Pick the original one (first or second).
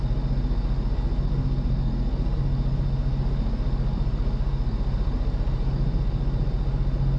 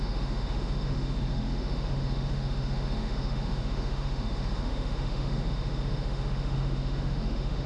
first